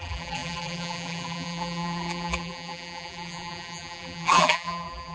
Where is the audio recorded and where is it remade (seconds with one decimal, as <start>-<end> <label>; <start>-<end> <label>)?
0.0-5.1 remade

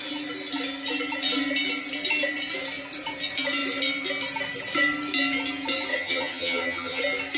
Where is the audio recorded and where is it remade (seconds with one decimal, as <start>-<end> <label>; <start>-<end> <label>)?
0.0-5.9 recorded; 5.9-7.0 remade; 7.0-7.4 recorded

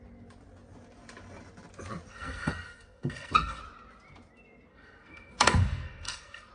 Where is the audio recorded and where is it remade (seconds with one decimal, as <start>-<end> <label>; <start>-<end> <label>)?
0.0-2.1 recorded; 2.1-3.6 remade; 3.6-4.7 recorded; 4.7-6.5 remade

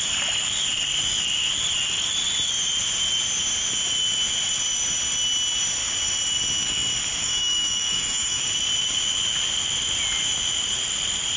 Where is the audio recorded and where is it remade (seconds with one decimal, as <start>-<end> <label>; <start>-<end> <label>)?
0.0-7.2 recorded; 7.2-8.4 remade; 8.4-11.4 recorded

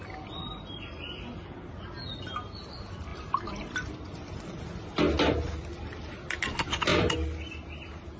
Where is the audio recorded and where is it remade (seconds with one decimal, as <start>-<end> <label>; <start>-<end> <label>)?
0.0-3.1 recorded; 3.1-5.0 remade; 5.0-8.2 recorded

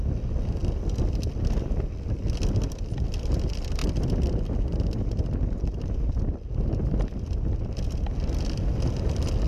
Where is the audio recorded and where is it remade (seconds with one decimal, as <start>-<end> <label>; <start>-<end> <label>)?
0.0-9.5 recorded